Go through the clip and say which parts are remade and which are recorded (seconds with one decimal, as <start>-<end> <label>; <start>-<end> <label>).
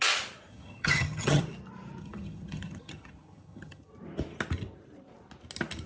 0.0-0.5 recorded; 0.5-1.4 remade; 1.4-2.0 recorded; 2.0-3.9 remade; 3.9-5.9 recorded